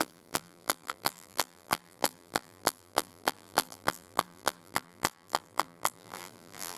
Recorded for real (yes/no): no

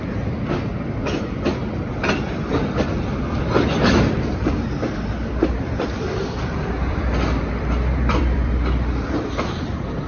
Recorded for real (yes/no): no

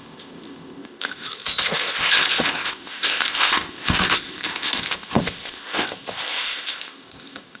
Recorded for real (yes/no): no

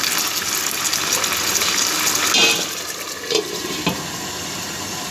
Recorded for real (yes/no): yes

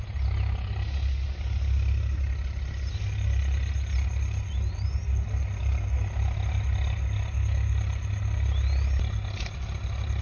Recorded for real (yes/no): yes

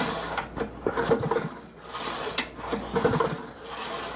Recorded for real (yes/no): yes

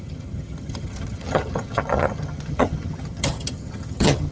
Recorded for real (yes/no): no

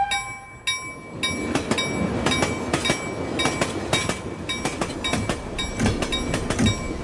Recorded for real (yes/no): yes